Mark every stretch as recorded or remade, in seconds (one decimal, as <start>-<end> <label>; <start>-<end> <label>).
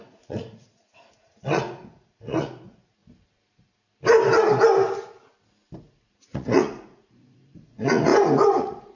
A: 0.0-3.0 remade; 3.0-5.8 recorded; 5.8-8.1 remade; 8.1-8.6 recorded; 8.6-9.0 remade